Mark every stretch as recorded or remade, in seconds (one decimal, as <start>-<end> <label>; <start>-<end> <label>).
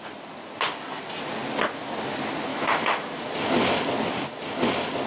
0.0-2.5 recorded; 2.5-3.2 remade; 3.2-5.1 recorded